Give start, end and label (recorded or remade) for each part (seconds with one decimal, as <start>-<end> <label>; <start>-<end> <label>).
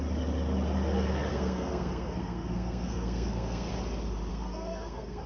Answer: 0.0-1.3 recorded; 1.3-3.7 remade; 3.7-4.3 recorded; 4.3-5.3 remade